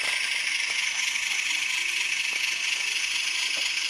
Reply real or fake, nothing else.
real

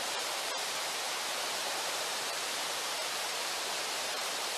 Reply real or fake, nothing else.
fake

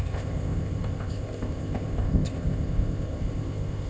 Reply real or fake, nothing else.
fake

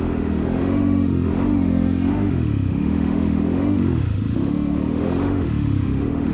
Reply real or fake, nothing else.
fake